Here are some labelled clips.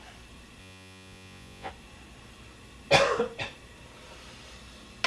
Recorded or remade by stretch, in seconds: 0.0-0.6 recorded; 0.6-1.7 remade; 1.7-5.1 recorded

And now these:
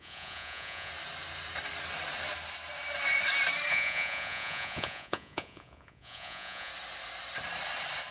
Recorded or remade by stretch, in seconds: 0.0-0.9 remade; 0.9-3.7 recorded; 3.7-6.7 remade; 6.7-8.1 recorded

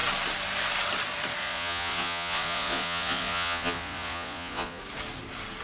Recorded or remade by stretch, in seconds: 0.0-1.4 recorded; 1.4-4.8 remade; 4.8-5.6 recorded

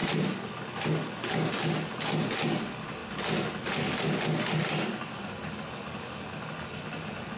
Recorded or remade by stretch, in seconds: 0.0-7.4 recorded

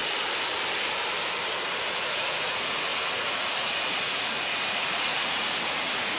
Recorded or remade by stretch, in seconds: 0.0-1.9 recorded; 1.9-6.2 remade